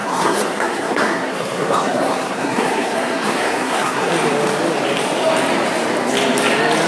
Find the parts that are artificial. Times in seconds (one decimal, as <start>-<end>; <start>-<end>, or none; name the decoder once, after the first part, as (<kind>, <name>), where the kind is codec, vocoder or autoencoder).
0.0-4.1 (codec, SNAC)